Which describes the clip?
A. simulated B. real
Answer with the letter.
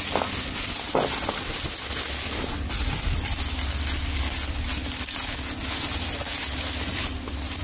B